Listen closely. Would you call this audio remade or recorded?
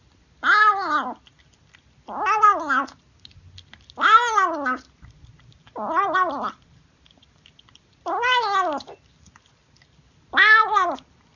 recorded